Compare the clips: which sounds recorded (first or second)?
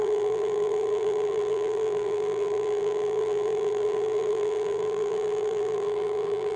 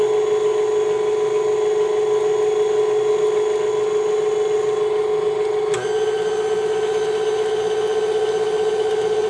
second